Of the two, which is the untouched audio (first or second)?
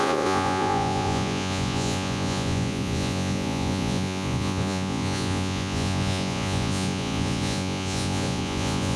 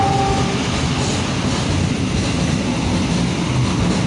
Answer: second